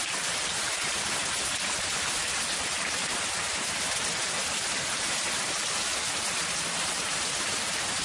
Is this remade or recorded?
recorded